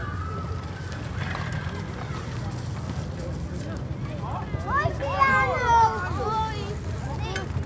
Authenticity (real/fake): real